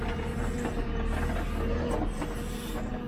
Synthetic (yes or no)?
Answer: no